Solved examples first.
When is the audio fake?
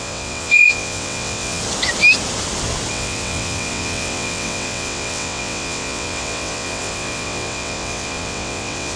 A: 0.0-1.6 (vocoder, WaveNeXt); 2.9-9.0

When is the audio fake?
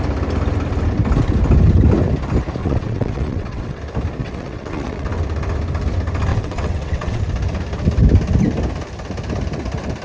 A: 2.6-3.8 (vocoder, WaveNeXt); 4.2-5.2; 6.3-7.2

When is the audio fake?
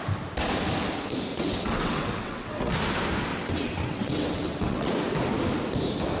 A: 1.3-2.7 (vocoder, WaveNeXt); 3.3-4.9